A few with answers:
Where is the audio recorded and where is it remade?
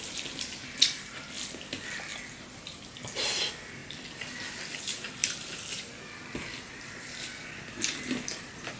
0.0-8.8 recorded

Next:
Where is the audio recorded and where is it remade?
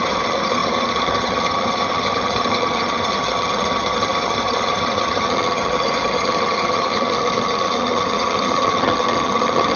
0.0-9.8 remade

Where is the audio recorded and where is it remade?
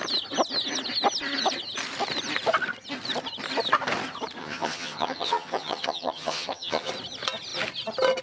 0.0-4.4 recorded; 4.4-6.9 remade; 6.9-8.2 recorded